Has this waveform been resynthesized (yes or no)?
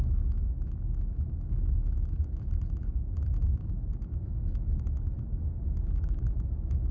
yes